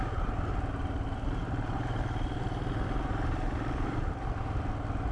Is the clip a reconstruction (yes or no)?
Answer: no